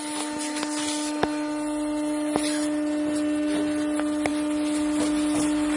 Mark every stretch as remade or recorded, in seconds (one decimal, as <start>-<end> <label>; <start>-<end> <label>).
0.0-5.8 recorded